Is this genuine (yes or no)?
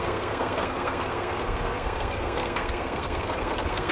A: no